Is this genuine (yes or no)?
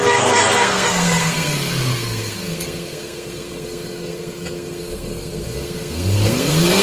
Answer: no